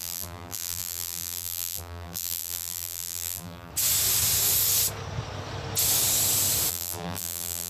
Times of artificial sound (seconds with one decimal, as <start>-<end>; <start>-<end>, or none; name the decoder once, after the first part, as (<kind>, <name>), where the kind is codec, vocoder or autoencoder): 0.0-3.7 (vocoder, BigVGAN v2); 6.7-7.7